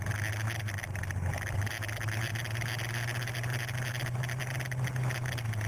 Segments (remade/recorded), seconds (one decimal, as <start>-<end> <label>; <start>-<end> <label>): 0.0-5.7 recorded